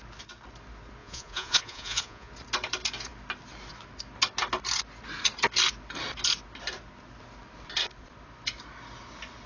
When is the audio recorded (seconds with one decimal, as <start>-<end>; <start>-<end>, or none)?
0.0-1.0; 2.3-9.5